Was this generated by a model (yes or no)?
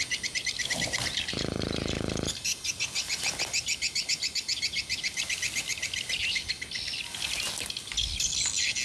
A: no